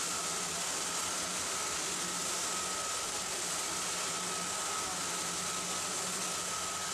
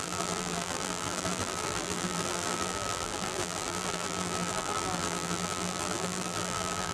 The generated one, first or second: second